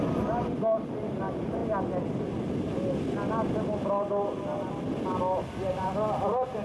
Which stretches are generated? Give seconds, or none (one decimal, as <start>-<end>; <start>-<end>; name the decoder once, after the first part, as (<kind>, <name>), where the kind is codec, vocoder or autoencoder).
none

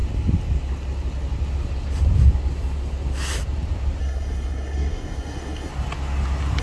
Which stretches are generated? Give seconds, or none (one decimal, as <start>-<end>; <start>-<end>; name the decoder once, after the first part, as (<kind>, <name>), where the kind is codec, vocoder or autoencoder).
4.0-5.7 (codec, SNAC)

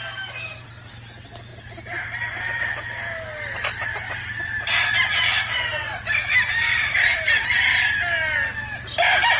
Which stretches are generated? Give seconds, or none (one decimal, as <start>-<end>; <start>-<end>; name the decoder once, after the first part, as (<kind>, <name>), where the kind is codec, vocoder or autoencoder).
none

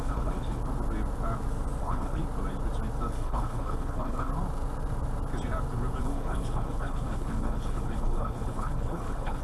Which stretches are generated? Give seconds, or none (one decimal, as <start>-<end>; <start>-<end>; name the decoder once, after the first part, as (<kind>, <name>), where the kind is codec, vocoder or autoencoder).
0.0-0.6 (codec, HILCodec); 1.8-2.2; 3.1-4.3; 6.0-9.4

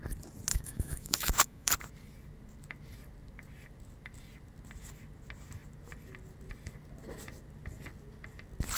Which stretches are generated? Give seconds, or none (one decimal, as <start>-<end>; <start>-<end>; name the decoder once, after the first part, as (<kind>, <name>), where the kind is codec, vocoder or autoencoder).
0.5-1.7 (autoencoder, DAC-VAE)